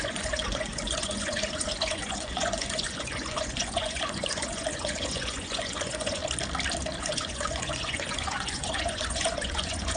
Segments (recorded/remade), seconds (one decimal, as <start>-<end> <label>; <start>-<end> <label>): 0.0-6.2 remade; 6.2-7.0 recorded; 7.0-10.0 remade